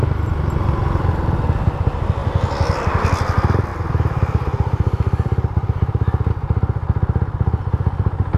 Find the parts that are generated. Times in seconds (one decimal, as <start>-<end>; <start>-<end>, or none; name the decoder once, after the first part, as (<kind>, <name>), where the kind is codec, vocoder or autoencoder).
2.2-2.9 (vocoder, BigVGAN v2); 3.7-6.3